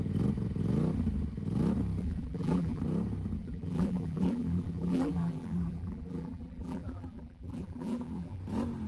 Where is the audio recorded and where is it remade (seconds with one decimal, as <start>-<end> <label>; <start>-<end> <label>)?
0.0-2.0 recorded; 2.0-2.8 remade; 2.8-3.4 recorded; 3.4-8.4 remade; 8.4-8.9 recorded